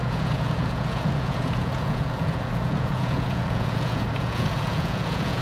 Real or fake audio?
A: fake